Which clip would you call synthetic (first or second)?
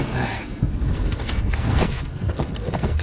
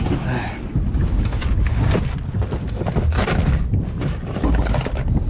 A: first